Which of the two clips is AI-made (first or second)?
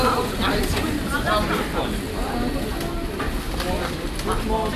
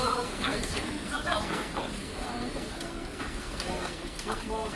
second